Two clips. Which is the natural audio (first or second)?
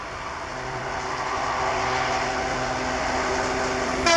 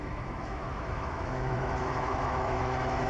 first